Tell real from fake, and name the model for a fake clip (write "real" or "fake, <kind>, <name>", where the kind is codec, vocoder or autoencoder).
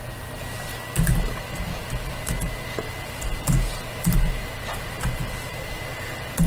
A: real